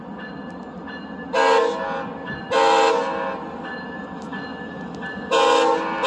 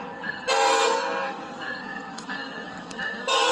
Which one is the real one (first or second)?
first